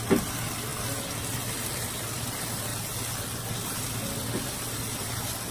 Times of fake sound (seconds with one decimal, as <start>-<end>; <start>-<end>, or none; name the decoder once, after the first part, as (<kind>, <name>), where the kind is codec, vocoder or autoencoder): 0.0-0.7 (vocoder, BigVGAN v2); 1.5-2.7; 3.6-5.5